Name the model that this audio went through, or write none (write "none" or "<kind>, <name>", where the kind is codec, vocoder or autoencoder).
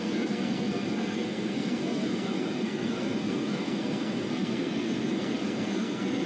codec, SNAC